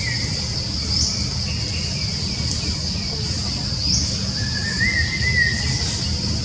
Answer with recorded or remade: recorded